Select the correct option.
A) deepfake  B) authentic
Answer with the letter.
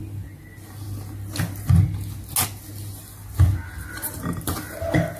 B